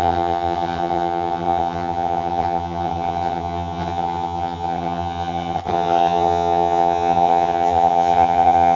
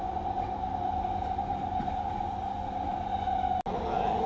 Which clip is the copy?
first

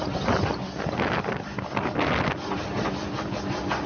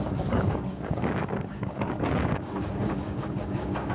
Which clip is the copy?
second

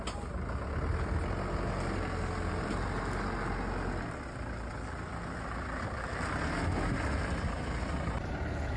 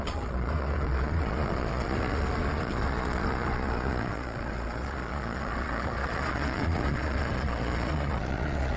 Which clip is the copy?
second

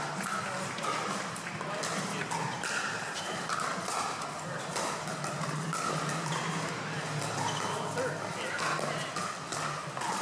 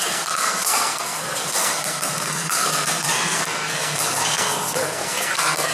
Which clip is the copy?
second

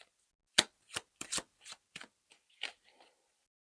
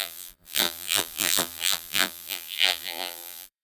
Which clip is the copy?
second